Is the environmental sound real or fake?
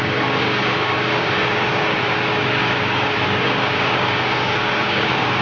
fake